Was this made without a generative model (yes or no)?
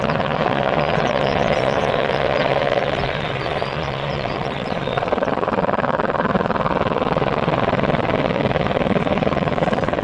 no